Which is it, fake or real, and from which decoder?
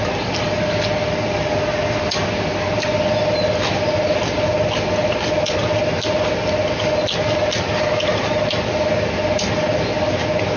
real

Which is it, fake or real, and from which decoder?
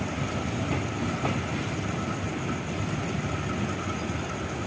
real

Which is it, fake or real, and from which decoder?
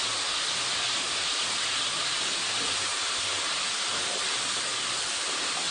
real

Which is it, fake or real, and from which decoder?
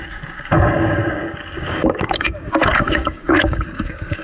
fake, codec, DAC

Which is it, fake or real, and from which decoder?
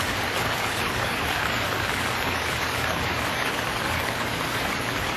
fake, codec, DAC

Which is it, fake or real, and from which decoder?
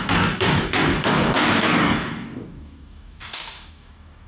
fake, codec, DAC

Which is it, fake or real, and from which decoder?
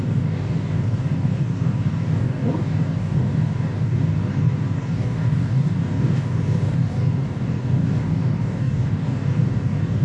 fake, codec, DAC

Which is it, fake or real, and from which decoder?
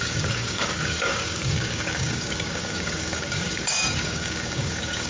fake, codec, DAC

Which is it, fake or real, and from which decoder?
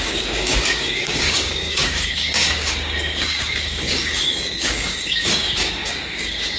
fake, codec, DAC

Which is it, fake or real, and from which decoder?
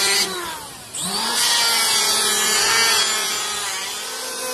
real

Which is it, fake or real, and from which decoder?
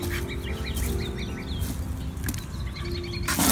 real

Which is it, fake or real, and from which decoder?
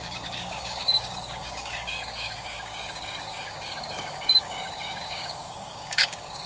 fake, codec, DAC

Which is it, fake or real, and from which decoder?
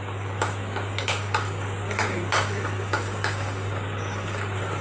fake, codec, DAC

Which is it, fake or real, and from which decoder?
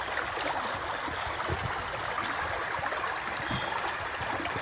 real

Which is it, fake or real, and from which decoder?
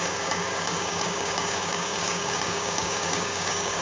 fake, codec, DAC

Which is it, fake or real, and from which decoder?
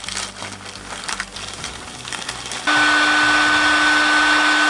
real